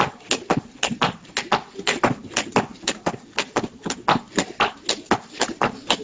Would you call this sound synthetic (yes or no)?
no